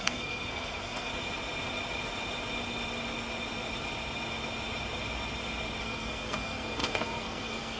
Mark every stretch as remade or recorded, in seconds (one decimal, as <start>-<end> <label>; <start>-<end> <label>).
0.0-1.1 remade; 1.1-5.8 recorded; 5.8-7.8 remade